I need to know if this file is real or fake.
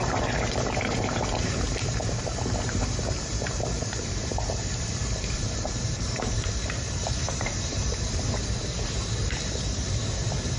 fake